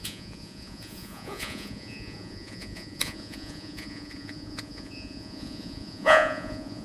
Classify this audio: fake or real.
fake